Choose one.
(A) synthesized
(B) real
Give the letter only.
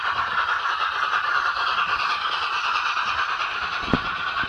B